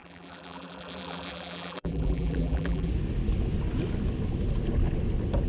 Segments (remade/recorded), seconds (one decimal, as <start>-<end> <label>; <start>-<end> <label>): 0.0-2.9 remade; 2.9-5.5 recorded